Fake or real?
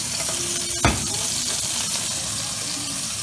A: real